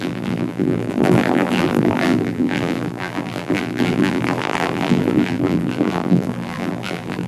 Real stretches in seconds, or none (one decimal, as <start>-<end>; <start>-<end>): none